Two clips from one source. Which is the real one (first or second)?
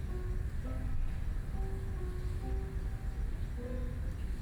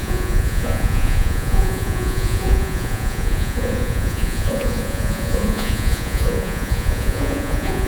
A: first